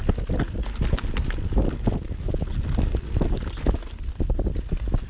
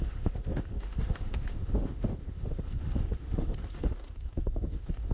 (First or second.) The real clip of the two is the first